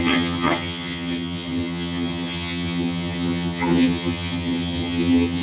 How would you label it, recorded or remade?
remade